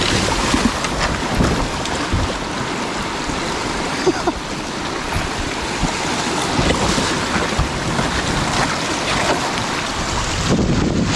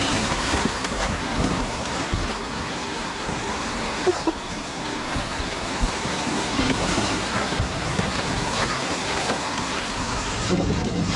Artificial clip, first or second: second